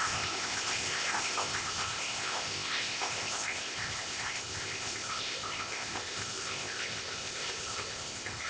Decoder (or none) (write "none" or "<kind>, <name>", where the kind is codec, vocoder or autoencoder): codec, ZipCodec